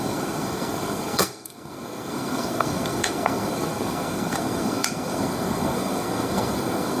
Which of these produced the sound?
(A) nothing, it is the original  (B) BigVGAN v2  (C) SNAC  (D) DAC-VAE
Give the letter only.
C